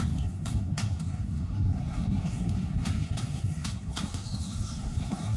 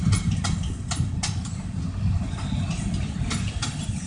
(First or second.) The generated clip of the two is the first